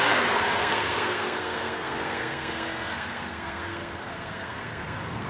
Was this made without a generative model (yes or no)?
no